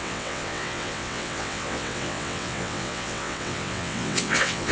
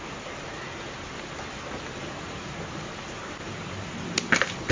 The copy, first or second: first